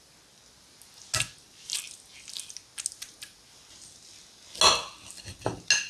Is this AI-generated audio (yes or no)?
no